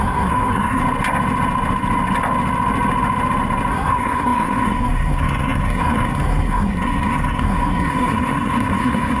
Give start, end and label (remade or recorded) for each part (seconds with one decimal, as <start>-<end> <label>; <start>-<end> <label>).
0.0-0.8 remade; 0.8-3.7 recorded; 3.7-9.2 remade